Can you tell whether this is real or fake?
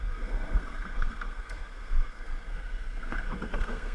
fake